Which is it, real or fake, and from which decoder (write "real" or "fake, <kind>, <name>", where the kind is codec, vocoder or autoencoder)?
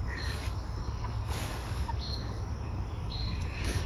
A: fake, codec, DAC